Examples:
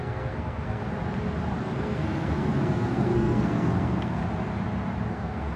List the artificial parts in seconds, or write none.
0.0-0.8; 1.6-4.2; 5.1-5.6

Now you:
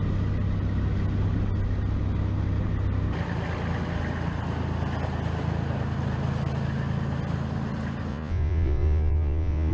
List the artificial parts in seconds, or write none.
8.1-9.7